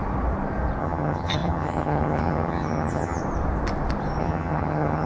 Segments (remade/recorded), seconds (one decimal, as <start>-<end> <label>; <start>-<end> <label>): 0.0-0.8 recorded; 0.8-3.2 remade; 3.2-4.2 recorded; 4.2-5.1 remade